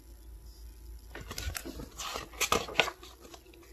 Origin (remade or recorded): recorded